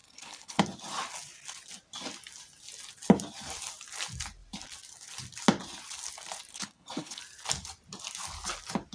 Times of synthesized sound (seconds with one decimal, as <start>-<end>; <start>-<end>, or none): 0.0-0.6; 6.5-7.2

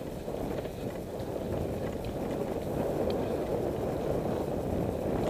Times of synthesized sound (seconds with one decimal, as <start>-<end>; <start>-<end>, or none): none

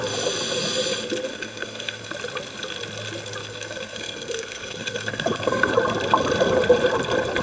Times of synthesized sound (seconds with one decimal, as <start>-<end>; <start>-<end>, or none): 1.3-2.1; 3.4-5.7

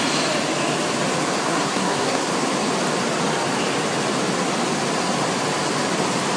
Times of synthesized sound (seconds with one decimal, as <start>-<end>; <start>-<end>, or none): 1.4-2.3

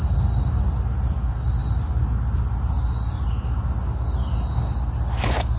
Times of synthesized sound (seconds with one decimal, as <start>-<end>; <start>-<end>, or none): none

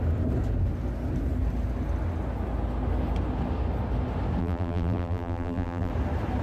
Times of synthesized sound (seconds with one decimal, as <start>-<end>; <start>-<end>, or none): 4.4-5.9

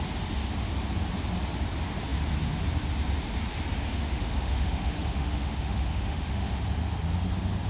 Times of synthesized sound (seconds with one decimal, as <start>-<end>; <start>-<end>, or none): 3.9-6.6